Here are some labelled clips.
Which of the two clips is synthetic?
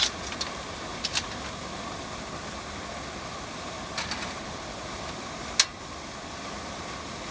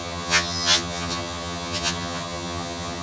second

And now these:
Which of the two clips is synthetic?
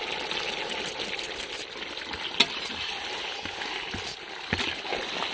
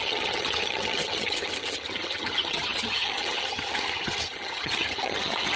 second